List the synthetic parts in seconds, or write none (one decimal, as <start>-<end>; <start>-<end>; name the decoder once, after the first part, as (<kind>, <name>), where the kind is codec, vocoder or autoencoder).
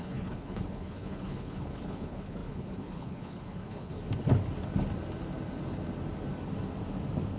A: 0.0-3.9 (codec, HILCodec)